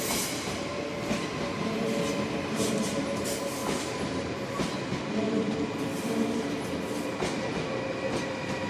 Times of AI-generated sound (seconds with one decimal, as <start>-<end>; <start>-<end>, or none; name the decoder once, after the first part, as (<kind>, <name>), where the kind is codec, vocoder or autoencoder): 0.0-0.7 (vocoder, BigVGAN v2); 1.4-3.6